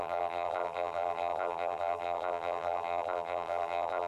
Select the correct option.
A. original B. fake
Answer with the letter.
B